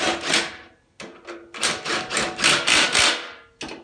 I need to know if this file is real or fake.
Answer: real